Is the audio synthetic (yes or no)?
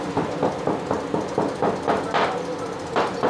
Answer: no